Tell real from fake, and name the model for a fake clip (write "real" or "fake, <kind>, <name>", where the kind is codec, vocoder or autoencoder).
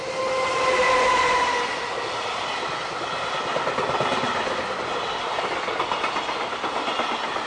real